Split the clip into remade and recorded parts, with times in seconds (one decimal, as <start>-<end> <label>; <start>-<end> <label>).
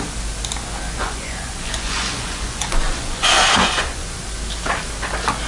0.0-0.9 recorded; 0.9-4.2 remade; 4.2-5.5 recorded